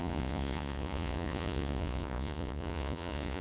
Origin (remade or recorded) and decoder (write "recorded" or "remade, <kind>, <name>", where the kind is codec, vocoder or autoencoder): remade, vocoder, Vocos